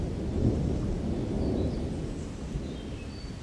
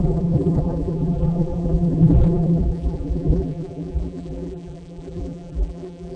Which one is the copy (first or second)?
second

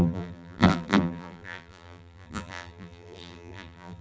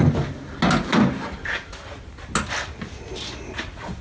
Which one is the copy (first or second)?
first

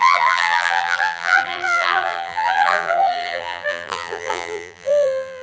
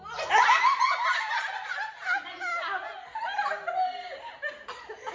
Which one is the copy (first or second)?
first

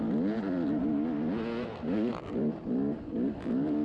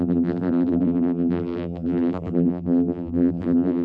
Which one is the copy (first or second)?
second